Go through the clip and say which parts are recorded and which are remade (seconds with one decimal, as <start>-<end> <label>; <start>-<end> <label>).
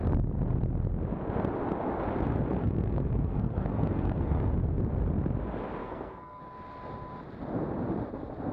0.0-2.6 recorded; 2.6-4.5 remade; 4.5-5.8 recorded; 5.8-6.4 remade; 6.4-8.5 recorded